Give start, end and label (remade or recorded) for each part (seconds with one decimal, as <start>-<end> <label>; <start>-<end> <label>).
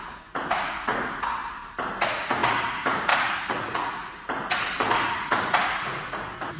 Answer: 0.0-1.4 remade; 1.4-2.0 recorded; 2.0-6.6 remade